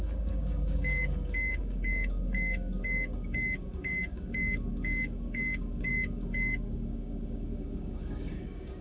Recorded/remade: remade